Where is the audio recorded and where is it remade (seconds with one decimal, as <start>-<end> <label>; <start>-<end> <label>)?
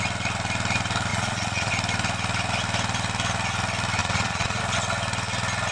0.0-1.1 recorded; 1.1-1.7 remade; 1.7-4.0 recorded; 4.0-4.6 remade; 4.6-5.7 recorded